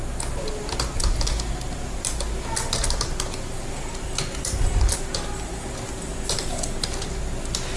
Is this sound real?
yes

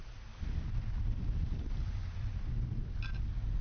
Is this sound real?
yes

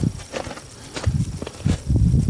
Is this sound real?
yes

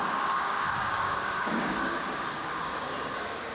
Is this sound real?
no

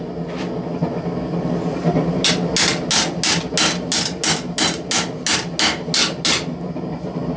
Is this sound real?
yes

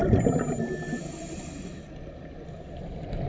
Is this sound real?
yes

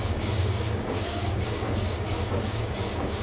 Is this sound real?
no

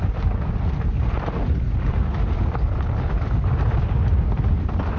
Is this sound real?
yes